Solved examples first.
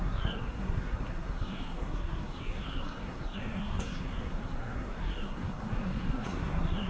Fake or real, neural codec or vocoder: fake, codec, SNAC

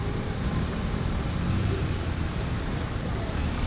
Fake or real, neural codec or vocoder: fake, vocoder, BigVGAN v2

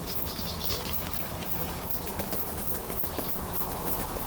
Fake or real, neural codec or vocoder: fake, codec, DAC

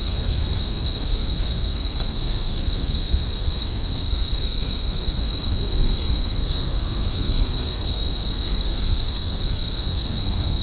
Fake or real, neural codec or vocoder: fake, codec, SNAC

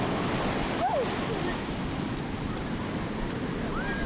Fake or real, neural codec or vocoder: real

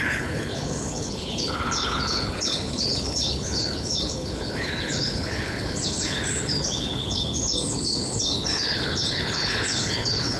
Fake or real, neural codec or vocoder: fake, codec, HILCodec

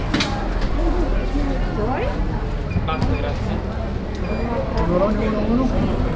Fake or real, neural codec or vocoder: real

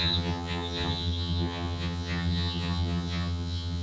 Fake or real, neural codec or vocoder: fake, vocoder, HiFi-GAN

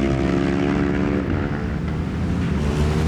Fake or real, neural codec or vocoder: real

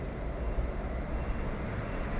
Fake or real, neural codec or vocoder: real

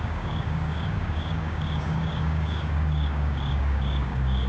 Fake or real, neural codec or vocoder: fake, codec, DAC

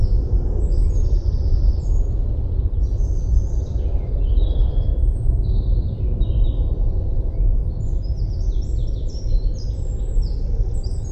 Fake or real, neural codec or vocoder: fake, vocoder, BigVGAN v2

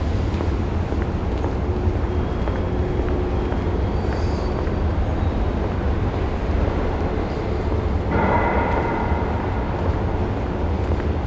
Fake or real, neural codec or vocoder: real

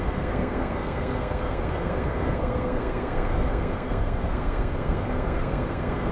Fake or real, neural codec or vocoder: fake, codec, SNAC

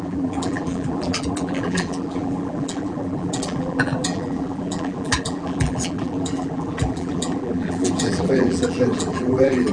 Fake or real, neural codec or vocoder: fake, vocoder, BigVGAN v2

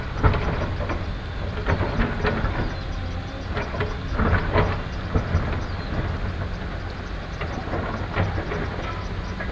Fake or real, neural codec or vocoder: real